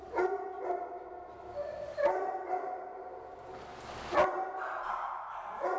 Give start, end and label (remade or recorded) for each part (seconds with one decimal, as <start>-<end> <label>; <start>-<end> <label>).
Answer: 0.0-5.8 recorded